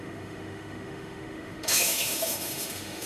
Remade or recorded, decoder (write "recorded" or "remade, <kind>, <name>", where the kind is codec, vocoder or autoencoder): remade, autoencoder, DAC-VAE